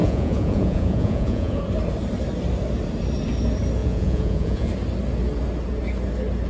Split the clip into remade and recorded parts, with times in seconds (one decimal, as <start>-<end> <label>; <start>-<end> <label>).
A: 0.0-1.6 remade; 1.6-3.8 recorded; 3.8-4.7 remade; 4.7-6.5 recorded